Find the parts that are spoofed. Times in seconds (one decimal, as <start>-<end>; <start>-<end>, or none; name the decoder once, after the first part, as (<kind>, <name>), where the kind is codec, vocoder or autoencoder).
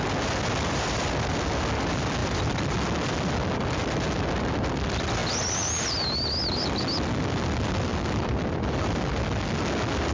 2.2-2.7 (vocoder, BigVGAN v2); 7.9-9.2